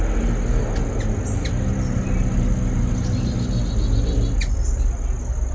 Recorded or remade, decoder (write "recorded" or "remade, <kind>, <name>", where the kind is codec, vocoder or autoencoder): recorded